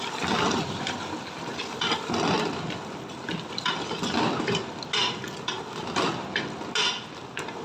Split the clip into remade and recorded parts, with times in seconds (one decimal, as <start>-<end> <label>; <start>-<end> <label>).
0.0-7.6 recorded